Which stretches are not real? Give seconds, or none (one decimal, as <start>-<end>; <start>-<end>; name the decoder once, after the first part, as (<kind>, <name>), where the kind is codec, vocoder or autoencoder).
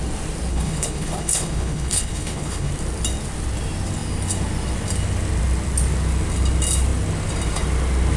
0.5-2.7 (codec, HILCodec)